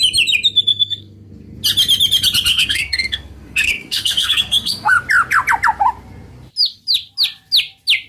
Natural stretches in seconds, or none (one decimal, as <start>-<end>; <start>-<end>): 0.0-0.7; 1.3-2.5; 4.9-8.1